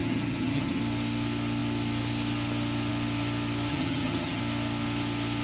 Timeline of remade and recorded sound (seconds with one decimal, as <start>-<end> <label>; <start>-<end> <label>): 0.0-0.8 remade; 0.8-3.7 recorded; 3.7-4.4 remade; 4.4-5.4 recorded